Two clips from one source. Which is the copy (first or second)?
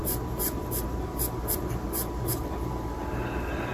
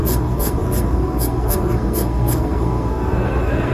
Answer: second